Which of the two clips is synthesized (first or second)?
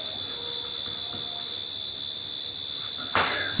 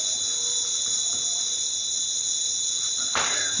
second